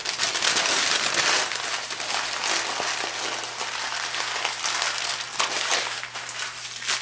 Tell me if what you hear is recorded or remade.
recorded